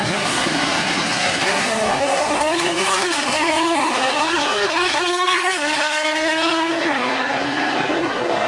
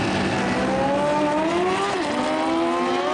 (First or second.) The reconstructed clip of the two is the first